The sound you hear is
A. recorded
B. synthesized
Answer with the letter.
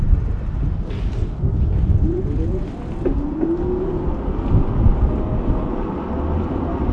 A